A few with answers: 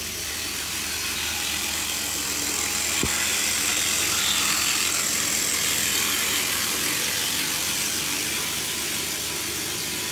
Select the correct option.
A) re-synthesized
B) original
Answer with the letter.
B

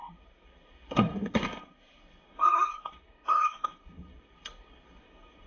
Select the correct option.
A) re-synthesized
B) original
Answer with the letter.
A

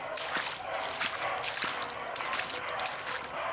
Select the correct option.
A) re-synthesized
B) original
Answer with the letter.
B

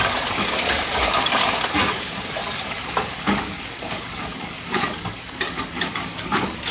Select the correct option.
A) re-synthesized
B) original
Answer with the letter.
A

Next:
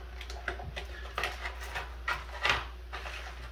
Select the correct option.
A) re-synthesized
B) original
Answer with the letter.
B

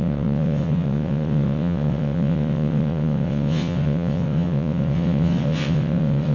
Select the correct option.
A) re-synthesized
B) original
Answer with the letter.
A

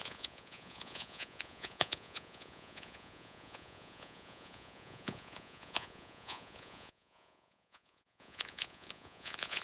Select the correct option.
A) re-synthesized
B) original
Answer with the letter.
A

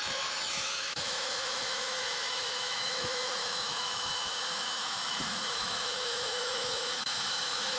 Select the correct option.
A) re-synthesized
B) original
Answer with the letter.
A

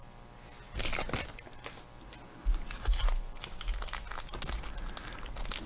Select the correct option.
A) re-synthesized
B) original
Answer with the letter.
B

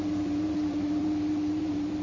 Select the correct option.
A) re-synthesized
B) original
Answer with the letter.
A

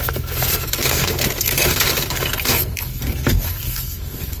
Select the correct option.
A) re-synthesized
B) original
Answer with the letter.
A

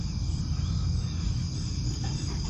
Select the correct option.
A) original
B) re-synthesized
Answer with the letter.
A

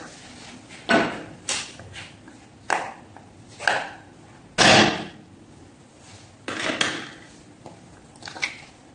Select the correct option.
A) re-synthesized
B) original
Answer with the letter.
B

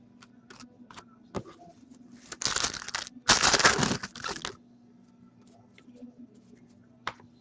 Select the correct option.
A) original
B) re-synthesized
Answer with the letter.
A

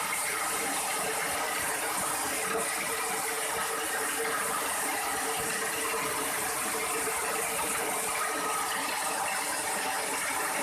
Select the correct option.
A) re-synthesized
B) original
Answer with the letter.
A